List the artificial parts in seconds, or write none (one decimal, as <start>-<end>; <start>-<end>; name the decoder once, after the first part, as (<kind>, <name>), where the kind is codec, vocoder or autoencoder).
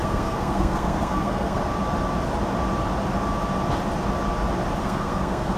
0.0-1.6 (codec, SNAC); 4.8-5.6